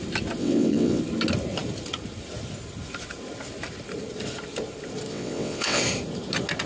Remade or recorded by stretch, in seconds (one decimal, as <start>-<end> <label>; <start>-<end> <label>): 0.0-0.4 recorded; 0.4-1.0 remade; 1.0-5.1 recorded; 5.1-5.8 remade; 5.8-6.7 recorded